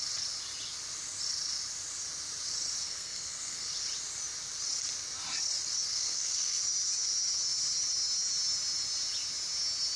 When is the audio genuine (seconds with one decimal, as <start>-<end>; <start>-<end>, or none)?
0.0-2.8; 3.7-5.9; 6.6-10.0